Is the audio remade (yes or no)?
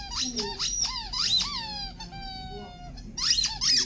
no